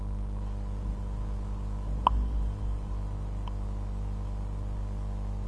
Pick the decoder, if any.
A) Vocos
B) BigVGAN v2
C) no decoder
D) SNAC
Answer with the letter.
C